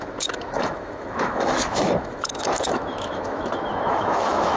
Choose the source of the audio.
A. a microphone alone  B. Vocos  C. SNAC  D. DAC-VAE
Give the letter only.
D